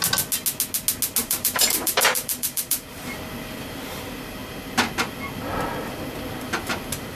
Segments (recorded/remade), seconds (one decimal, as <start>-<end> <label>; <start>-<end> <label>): 0.0-1.2 recorded; 1.2-3.0 remade; 3.0-7.2 recorded